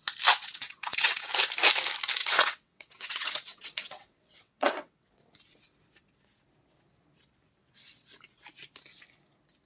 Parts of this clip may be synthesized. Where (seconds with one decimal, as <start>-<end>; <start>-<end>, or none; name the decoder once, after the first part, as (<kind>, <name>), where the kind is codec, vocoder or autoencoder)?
0.4-1.3 (vocoder, WaveNeXt); 2.2-5.2; 7.6-8.2